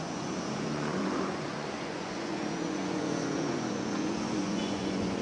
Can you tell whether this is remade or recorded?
remade